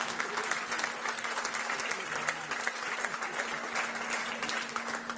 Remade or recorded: recorded